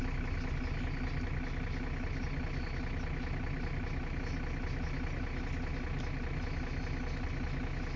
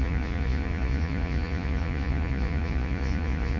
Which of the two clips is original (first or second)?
first